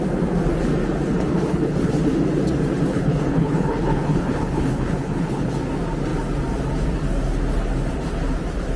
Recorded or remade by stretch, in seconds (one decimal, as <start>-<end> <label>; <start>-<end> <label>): 0.0-1.3 recorded; 1.3-1.9 remade; 1.9-2.9 recorded; 2.9-5.5 remade; 5.5-8.8 recorded